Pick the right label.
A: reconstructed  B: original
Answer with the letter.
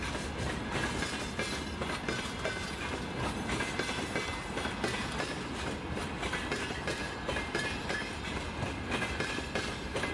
B